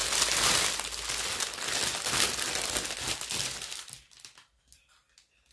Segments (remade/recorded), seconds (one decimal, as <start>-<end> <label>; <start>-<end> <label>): 0.0-5.5 recorded